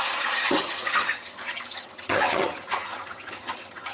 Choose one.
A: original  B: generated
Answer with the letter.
B